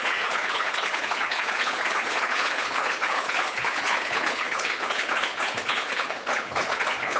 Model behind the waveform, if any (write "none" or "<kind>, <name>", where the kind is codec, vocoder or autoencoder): codec, HILCodec